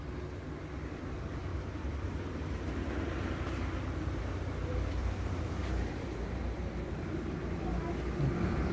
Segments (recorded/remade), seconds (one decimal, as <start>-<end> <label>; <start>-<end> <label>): 0.0-1.5 recorded; 1.5-4.2 remade; 4.2-5.0 recorded; 5.0-6.6 remade; 6.6-8.7 recorded